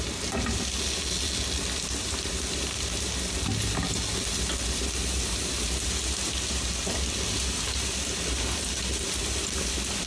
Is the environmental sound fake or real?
real